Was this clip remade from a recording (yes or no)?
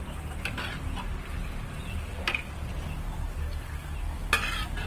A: no